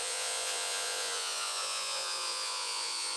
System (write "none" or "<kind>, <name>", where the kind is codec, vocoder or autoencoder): vocoder, Vocos